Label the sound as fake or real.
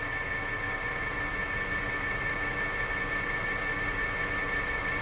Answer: real